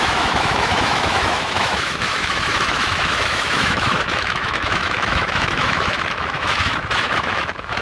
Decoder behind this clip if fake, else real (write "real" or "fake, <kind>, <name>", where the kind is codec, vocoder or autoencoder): fake, autoencoder, DAC-VAE